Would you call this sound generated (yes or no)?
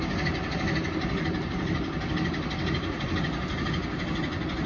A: no